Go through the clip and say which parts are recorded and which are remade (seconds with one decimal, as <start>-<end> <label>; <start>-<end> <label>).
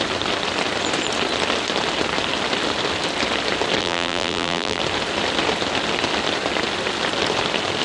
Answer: 0.0-3.8 recorded; 3.8-4.8 remade; 4.8-7.8 recorded